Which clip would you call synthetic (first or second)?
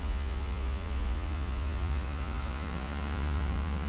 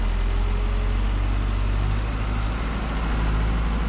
first